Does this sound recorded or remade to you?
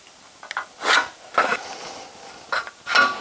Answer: recorded